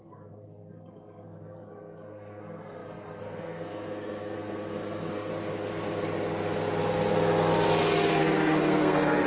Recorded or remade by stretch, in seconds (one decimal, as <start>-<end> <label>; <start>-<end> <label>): 0.0-5.3 remade; 5.3-8.2 recorded; 8.2-9.3 remade